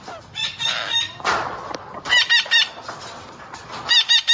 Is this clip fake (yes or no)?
no